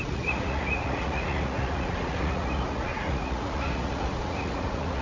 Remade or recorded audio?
remade